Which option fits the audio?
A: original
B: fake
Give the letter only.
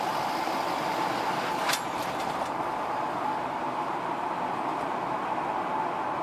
A